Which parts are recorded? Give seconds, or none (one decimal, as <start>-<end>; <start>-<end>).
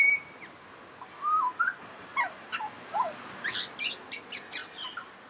0.0-1.7; 2.5-4.6